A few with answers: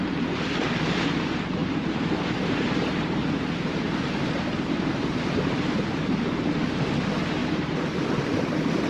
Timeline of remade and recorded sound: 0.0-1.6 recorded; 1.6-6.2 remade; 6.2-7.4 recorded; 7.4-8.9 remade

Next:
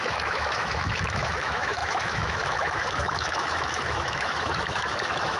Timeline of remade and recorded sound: 0.0-5.4 remade

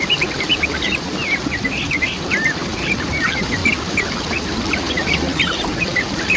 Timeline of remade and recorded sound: 0.0-6.4 recorded